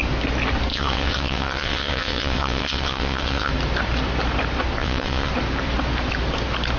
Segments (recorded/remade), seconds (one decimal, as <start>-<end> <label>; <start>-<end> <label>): 0.0-0.7 recorded; 0.7-3.5 remade; 3.5-4.8 recorded; 4.8-5.3 remade; 5.3-6.8 recorded